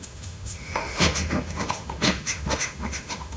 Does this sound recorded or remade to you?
remade